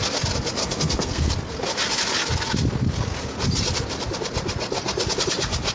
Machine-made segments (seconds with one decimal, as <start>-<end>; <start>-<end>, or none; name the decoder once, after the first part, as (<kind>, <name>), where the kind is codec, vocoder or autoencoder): 0.6-1.3 (codec, SNAC)